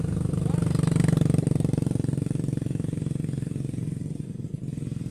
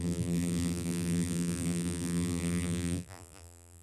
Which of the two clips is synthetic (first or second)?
second